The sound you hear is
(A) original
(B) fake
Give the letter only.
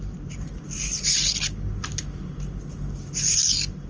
A